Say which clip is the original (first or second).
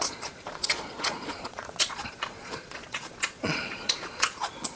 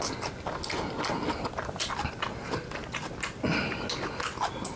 second